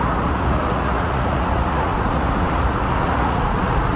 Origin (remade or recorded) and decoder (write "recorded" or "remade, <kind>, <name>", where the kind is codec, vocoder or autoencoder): remade, vocoder, Vocos